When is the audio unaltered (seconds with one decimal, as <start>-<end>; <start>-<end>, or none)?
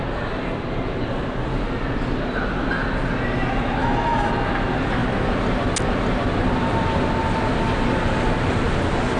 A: 0.0-3.8; 4.3-9.2